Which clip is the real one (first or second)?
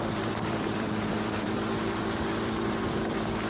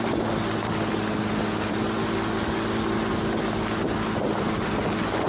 second